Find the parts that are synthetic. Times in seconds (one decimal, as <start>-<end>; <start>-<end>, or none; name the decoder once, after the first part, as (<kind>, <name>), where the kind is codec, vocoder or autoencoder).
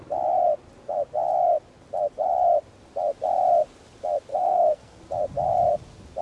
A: 4.3-5.0 (codec, SNAC)